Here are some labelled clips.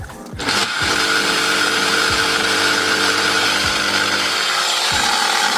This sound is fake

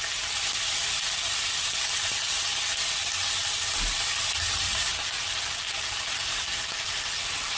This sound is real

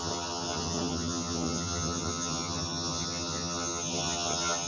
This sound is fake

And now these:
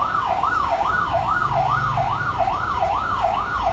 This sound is fake